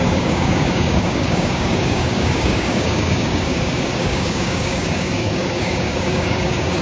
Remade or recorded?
remade